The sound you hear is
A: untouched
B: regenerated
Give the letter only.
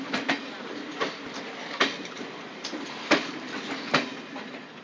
A